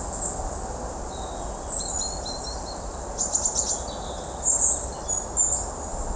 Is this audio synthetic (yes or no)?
no